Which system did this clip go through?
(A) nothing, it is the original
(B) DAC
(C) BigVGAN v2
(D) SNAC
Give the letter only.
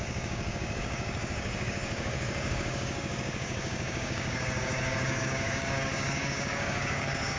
B